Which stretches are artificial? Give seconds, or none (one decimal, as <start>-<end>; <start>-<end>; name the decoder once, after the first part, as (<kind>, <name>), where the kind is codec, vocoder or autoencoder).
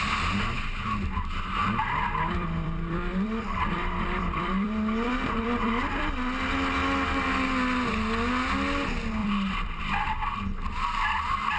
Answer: 1.6-6.1 (vocoder, BigVGAN v2); 9.2-9.8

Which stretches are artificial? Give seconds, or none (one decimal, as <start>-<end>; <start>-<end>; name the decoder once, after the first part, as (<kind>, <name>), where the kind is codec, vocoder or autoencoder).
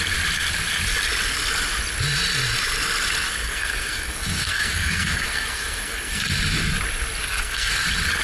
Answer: 3.4-6.2 (codec, SNAC); 7.2-7.7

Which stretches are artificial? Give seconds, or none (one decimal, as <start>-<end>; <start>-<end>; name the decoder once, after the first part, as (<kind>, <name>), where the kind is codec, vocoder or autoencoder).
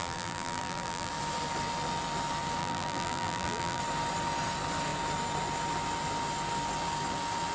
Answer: 0.0-1.1 (vocoder, BigVGAN v2); 2.6-3.8